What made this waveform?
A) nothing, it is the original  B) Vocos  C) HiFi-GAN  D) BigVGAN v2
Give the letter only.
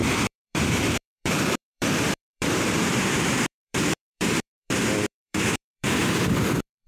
D